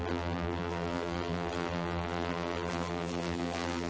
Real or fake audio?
fake